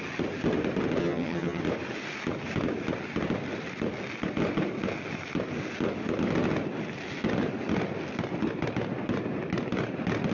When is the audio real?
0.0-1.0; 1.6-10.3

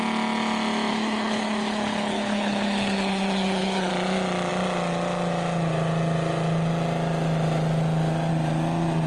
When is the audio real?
0.0-0.9; 3.9-9.1